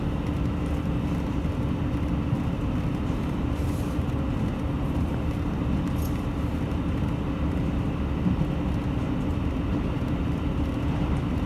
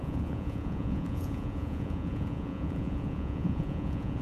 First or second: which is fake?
second